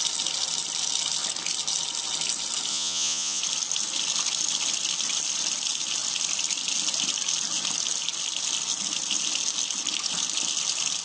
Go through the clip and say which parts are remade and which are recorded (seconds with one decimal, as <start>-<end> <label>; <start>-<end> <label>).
0.0-2.7 recorded; 2.7-3.4 remade; 3.4-11.0 recorded

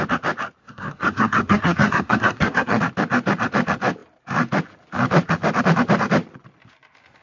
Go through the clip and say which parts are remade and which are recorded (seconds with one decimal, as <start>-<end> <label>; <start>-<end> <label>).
0.0-0.6 recorded; 0.6-2.8 remade; 2.8-7.2 recorded

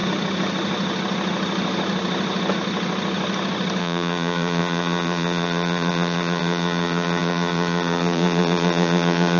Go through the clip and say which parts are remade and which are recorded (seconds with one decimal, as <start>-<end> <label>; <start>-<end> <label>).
0.0-3.8 recorded; 3.8-9.4 remade

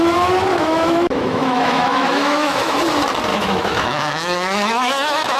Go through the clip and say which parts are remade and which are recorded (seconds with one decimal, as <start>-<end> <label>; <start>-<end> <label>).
0.0-0.5 recorded; 0.5-2.8 remade; 2.8-3.3 recorded; 3.3-5.4 remade